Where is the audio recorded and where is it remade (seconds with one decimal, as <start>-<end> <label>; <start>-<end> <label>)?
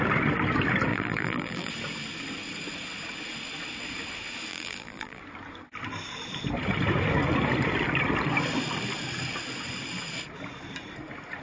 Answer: 0.0-0.9 recorded; 0.9-1.7 remade; 1.7-4.5 recorded; 4.5-5.2 remade; 5.2-11.4 recorded